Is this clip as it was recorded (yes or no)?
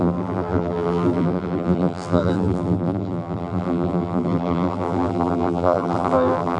no